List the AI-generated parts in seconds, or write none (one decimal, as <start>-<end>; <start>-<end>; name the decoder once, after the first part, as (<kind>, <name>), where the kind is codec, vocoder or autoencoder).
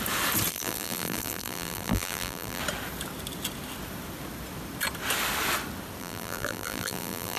0.5-2.6 (vocoder, BigVGAN v2); 6.0-7.4